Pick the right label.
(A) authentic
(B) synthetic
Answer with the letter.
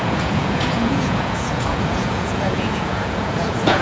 B